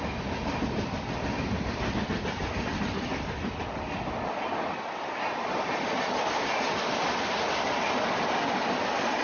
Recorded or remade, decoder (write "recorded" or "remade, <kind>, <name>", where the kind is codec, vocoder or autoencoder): recorded